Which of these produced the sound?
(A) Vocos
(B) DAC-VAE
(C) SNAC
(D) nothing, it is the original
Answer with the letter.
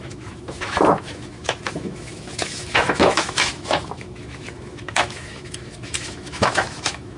B